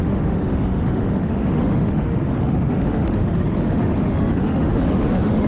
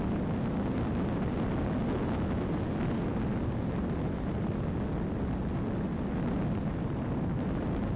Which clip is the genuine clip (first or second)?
second